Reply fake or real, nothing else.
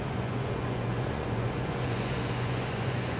fake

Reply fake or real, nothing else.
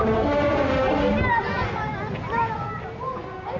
real